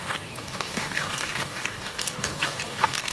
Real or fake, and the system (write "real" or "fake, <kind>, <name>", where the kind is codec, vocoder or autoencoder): fake, codec, DAC